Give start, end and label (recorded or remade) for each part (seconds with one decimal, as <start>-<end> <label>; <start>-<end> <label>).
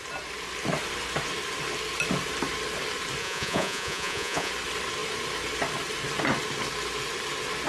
0.0-3.2 recorded; 3.2-4.5 remade; 4.5-7.7 recorded